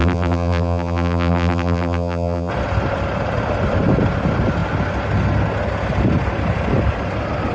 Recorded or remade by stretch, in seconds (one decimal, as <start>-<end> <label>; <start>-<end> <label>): 0.0-2.5 remade; 2.5-7.5 recorded